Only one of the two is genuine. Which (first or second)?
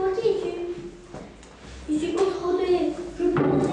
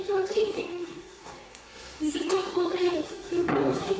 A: first